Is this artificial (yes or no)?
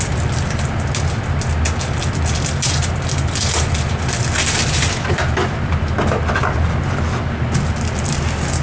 no